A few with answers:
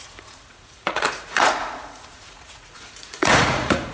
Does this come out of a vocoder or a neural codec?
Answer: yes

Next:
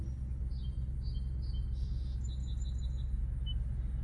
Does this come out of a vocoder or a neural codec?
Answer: no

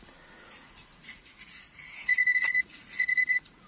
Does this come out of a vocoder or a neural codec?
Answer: yes